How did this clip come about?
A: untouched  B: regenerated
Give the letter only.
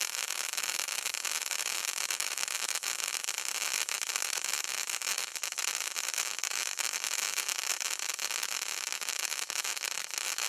B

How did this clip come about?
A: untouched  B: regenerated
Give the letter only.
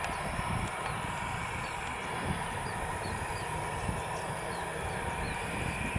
A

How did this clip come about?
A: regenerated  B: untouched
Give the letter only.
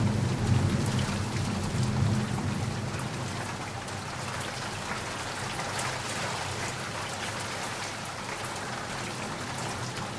B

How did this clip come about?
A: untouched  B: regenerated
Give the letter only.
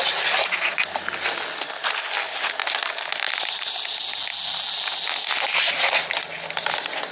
A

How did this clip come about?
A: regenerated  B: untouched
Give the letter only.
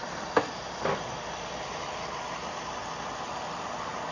B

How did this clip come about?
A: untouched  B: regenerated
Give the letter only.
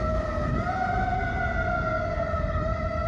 A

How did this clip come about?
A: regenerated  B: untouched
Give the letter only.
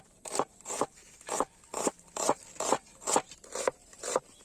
B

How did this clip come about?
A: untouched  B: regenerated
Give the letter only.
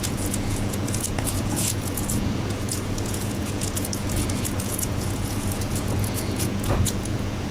B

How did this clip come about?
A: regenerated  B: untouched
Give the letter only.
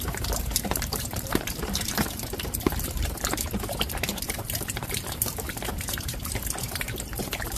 A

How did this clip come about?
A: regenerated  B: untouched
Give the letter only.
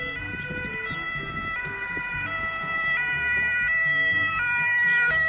B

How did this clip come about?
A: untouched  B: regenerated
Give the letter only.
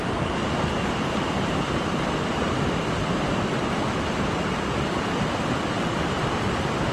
A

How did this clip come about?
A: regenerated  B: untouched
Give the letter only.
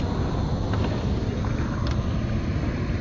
B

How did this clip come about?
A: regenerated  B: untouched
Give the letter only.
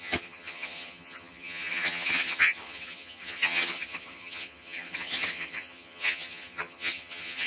A